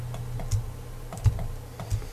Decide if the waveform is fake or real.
real